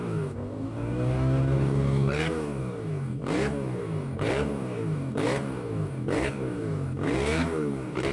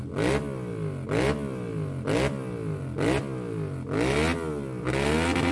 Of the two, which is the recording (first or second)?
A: second